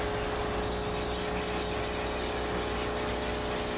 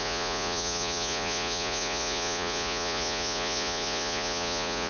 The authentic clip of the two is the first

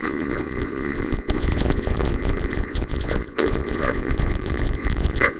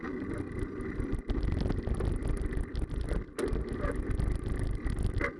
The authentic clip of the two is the second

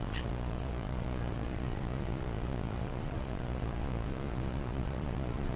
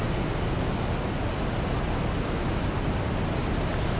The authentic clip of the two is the second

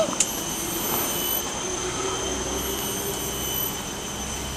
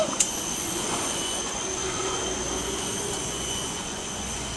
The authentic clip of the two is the first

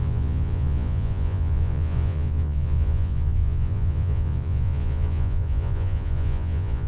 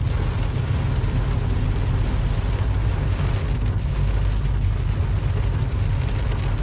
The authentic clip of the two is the second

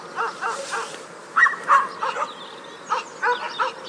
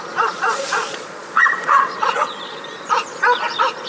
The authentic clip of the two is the first